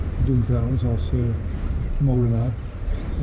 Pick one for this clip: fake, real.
fake